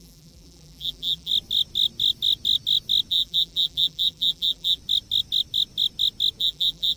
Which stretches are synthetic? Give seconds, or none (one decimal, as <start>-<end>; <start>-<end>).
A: 0.0-1.3; 3.1-4.8; 6.4-7.0